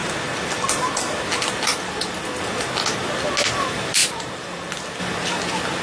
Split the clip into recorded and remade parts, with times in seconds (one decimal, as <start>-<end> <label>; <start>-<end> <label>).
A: 0.0-5.8 recorded